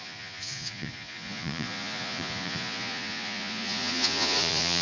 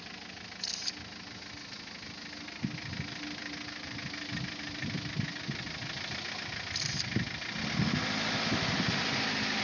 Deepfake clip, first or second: first